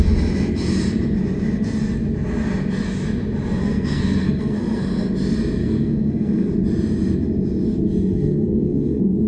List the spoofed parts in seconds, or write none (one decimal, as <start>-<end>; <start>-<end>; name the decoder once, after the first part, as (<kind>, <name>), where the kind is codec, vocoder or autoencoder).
3.6-4.8 (codec, SNAC); 5.6-6.5; 8.1-9.3